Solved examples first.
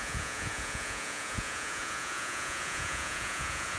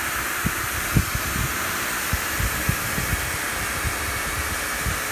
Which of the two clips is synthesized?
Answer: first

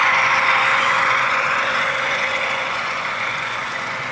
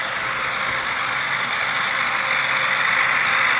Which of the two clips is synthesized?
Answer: first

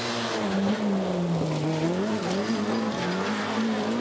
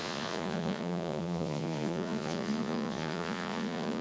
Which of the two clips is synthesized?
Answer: second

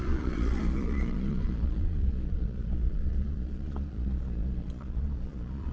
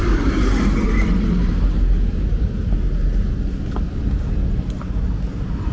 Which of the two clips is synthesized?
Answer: first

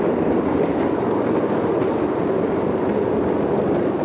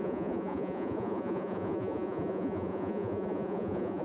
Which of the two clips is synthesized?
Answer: second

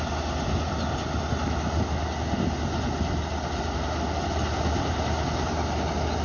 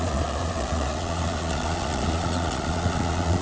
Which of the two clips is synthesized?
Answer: second